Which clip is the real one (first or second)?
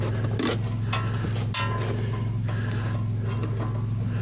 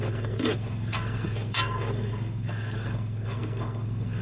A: first